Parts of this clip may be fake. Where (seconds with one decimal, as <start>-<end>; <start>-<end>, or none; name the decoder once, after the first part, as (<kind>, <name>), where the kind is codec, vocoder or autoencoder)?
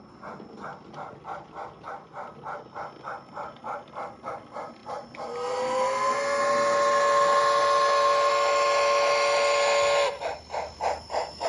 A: none